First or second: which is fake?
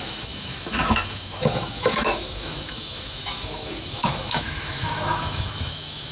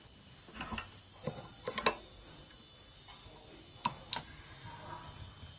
first